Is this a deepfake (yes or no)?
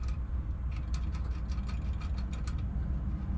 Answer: no